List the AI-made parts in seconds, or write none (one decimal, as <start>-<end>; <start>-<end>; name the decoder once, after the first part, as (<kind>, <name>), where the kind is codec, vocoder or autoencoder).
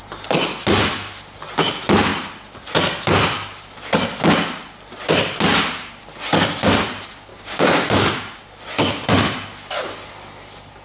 7.3-8.4 (codec, DAC)